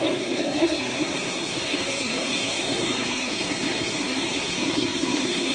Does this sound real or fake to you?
fake